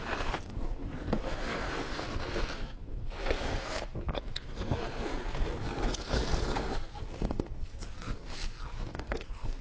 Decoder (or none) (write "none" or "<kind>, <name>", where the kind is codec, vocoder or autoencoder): codec, SNAC